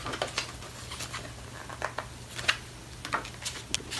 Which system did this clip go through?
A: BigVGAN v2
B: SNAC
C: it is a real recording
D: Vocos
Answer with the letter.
C